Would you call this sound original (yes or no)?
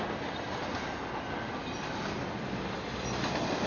yes